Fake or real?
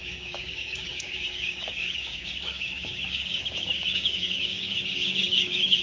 fake